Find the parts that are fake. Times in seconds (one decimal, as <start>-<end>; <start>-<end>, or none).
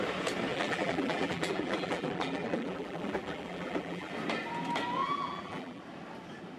0.5-4.1; 5.0-5.8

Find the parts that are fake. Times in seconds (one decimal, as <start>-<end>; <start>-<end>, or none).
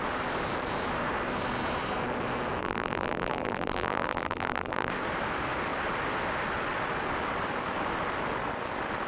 2.6-4.9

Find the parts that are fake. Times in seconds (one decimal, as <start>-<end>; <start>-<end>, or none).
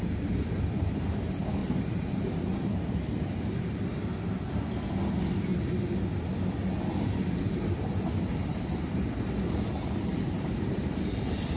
1.6-3.5; 10.1-11.1